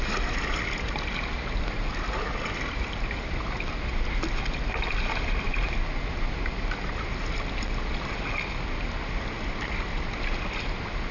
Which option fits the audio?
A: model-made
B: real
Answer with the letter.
B